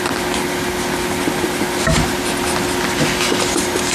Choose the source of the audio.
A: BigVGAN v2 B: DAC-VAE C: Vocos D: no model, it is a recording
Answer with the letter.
D